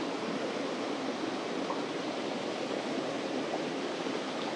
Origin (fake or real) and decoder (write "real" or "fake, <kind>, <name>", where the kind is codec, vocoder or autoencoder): real